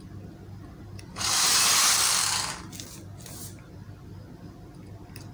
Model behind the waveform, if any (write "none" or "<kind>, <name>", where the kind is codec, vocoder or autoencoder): none